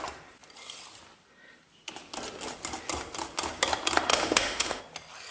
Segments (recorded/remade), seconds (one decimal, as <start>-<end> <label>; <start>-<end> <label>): 0.0-4.1 recorded; 4.1-4.8 remade; 4.8-5.3 recorded